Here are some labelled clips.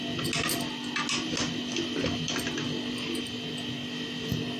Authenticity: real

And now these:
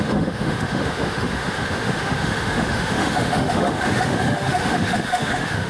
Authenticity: fake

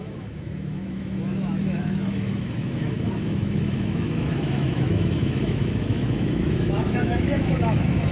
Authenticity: fake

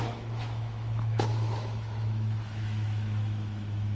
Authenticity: fake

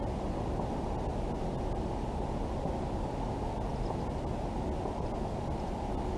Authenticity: real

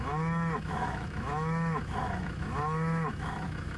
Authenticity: fake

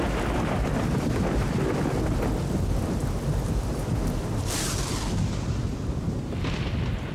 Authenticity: real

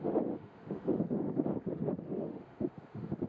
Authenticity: fake